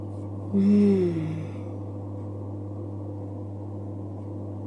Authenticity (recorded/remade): recorded